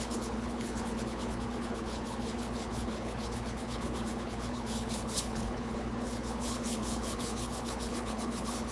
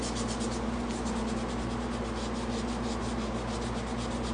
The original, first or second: second